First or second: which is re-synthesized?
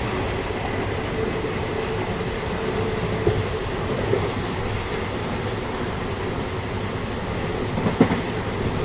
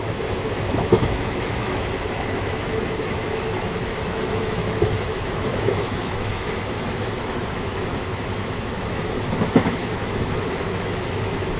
second